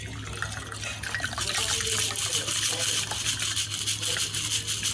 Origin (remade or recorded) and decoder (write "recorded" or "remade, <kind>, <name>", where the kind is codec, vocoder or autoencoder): recorded